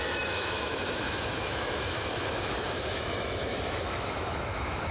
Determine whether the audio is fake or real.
fake